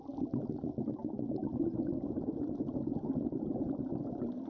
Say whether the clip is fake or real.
real